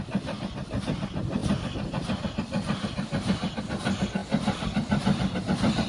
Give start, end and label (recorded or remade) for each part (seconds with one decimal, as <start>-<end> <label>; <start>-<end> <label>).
0.0-5.9 recorded